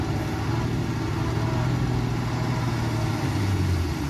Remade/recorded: recorded